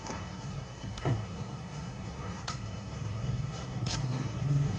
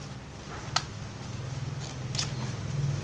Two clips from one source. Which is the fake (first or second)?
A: first